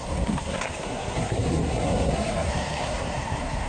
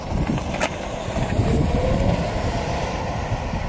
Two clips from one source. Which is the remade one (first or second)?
first